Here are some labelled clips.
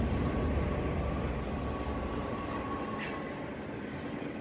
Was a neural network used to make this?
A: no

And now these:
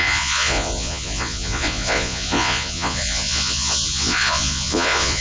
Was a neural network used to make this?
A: yes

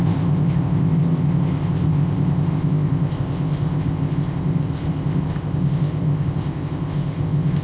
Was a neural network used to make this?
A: yes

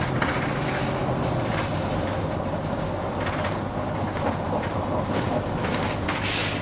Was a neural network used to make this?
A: no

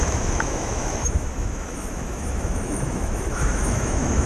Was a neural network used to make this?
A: yes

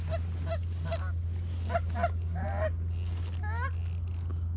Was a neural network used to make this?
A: no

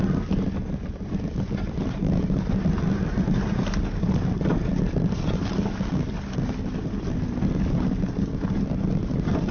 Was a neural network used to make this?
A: no